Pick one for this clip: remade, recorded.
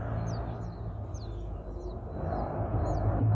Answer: recorded